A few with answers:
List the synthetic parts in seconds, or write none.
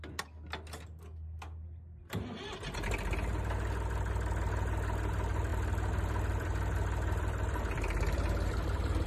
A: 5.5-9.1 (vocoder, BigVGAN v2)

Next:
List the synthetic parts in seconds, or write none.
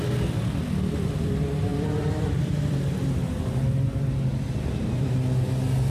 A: 1.7-3.1 (vocoder, BigVGAN v2)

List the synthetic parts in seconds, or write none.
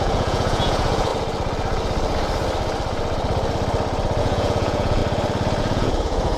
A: 0.0-1.1 (vocoder, Vocos); 4.2-5.0; 5.6-6.4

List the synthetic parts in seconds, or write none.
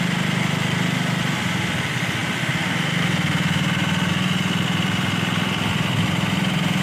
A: none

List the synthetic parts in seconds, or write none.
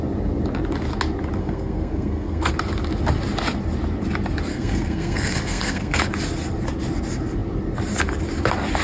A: 1.4-2.5 (codec, SNAC); 4.5-6.0